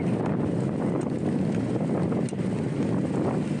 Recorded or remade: recorded